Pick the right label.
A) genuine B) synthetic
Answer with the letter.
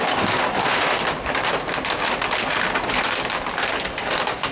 A